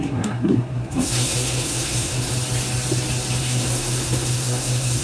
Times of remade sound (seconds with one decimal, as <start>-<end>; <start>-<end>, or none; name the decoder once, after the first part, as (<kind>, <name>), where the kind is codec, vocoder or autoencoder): 0.0-2.3 (codec, SNAC); 3.4-5.0